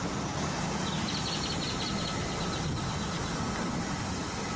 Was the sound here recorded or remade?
recorded